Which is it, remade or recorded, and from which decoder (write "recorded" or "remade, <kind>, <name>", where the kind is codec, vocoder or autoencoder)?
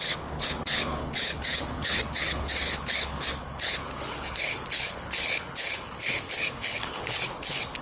remade, codec, HILCodec